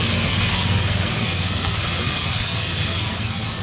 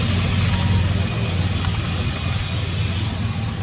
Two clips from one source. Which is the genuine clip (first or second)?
second